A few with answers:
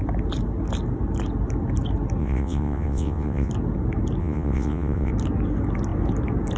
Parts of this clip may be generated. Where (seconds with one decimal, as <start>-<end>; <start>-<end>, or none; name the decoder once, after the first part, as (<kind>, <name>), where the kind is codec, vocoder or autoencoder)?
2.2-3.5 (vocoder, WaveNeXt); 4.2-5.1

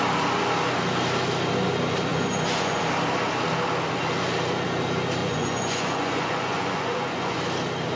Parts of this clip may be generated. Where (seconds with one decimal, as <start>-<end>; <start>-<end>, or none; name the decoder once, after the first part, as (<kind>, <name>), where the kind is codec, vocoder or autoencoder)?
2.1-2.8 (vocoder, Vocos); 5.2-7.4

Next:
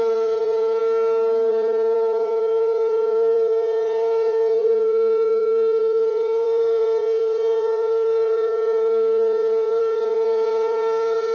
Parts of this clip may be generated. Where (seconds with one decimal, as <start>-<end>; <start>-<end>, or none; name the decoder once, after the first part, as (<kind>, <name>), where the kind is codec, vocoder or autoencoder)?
0.0-0.8 (vocoder, Vocos); 1.5-11.3

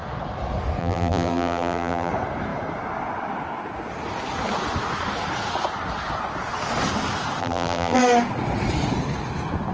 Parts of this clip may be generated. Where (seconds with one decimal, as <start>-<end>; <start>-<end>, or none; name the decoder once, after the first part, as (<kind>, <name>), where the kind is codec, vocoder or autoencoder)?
0.8-2.1 (vocoder, BigVGAN v2); 7.4-8.0

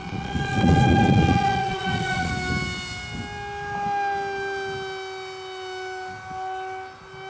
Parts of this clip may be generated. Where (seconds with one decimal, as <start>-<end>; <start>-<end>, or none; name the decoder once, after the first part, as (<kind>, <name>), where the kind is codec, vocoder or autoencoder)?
0.0-2.3 (vocoder, Vocos)

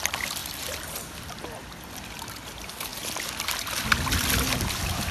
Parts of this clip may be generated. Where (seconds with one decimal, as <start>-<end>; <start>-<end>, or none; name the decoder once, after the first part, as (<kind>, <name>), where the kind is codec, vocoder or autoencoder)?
0.0-2.9 (vocoder, BigVGAN v2); 4.4-5.1

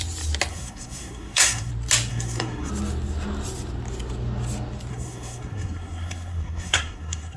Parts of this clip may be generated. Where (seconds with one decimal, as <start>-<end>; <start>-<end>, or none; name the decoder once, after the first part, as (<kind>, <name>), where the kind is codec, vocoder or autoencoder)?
0.5-1.7 (codec, SNAC); 2.1-2.7; 4.9-7.4

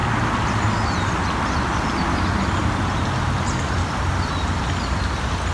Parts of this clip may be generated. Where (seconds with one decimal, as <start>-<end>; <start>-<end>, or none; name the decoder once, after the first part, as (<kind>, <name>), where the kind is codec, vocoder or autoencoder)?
none